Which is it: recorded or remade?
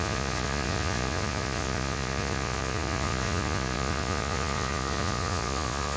remade